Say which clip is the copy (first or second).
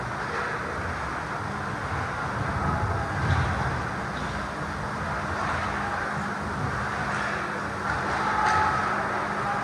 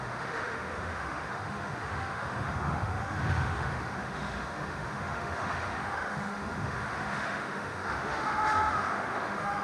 second